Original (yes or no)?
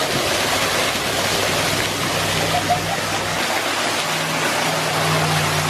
yes